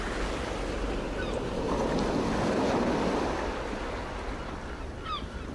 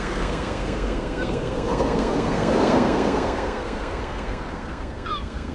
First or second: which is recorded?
first